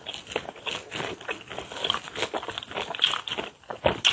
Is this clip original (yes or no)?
yes